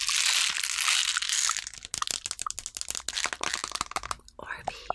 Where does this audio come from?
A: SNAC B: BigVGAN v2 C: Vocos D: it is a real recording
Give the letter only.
D